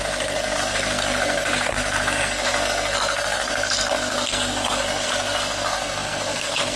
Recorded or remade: remade